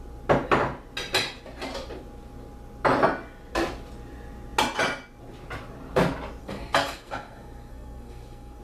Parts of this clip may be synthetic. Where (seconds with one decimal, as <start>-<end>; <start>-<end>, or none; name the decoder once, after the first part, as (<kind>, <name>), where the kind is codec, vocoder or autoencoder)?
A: 6.4-8.6 (codec, SNAC)